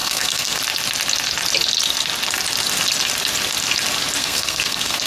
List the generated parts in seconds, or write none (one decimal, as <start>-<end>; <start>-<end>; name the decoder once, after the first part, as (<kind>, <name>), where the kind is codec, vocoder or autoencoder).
0.0-0.6 (codec, SNAC); 4.2-5.1